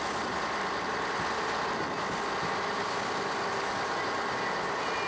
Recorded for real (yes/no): yes